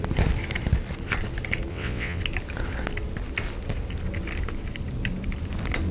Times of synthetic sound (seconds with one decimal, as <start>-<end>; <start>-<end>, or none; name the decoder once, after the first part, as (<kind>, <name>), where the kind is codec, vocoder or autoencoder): 1.7-2.2 (vocoder, WaveNeXt)